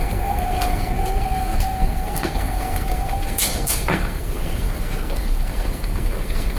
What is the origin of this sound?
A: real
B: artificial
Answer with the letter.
B